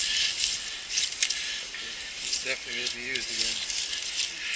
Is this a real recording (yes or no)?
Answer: yes